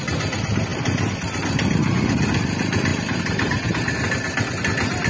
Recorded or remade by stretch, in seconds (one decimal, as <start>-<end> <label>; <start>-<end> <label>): 0.0-0.7 recorded; 0.7-1.4 remade; 1.4-2.9 recorded; 2.9-4.0 remade; 4.0-5.1 recorded